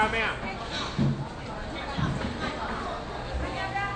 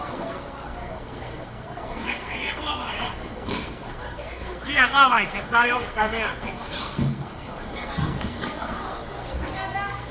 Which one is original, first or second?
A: first